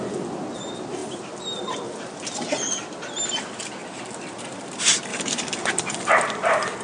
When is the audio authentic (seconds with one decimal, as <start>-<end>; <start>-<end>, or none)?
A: 0.0-5.1; 6.1-6.8